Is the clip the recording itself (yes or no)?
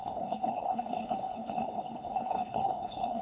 no